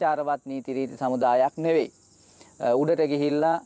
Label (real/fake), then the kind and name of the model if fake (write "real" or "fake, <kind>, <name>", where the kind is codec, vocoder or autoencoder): fake, vocoder, Vocos